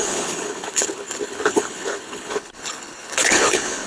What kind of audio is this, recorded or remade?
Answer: remade